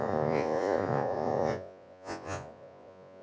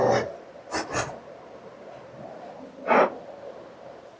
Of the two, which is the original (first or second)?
second